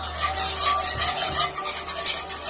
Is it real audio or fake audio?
real